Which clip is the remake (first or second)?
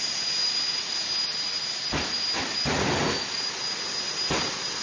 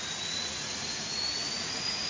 second